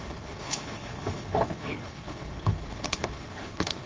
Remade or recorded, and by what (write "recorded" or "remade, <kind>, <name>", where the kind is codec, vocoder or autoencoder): remade, codec, HILCodec